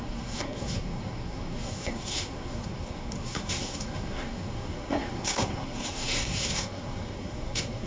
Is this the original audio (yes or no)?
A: no